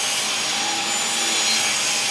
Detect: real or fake real